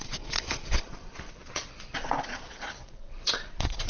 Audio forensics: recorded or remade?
remade